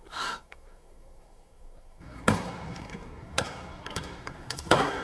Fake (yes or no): yes